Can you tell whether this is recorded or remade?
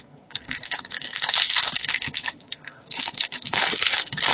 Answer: remade